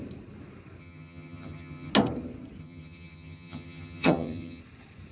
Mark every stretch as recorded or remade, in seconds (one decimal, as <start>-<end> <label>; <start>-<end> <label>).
0.0-0.8 recorded; 0.8-1.9 remade; 1.9-2.6 recorded; 2.6-4.6 remade; 4.6-5.1 recorded